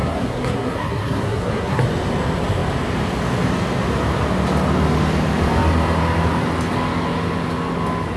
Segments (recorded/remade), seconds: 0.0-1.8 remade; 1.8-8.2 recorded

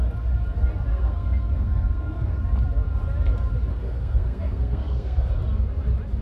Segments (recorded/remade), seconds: 0.0-0.9 recorded; 0.9-2.4 remade; 2.4-3.7 recorded; 3.7-5.3 remade; 5.3-6.2 recorded

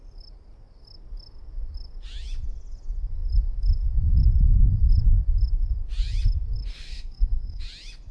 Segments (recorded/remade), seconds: 0.0-6.7 recorded; 6.7-7.6 remade; 7.6-8.1 recorded

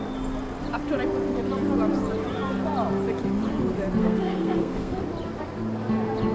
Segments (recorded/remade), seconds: 0.0-4.0 recorded; 4.0-5.0 remade; 5.0-6.3 recorded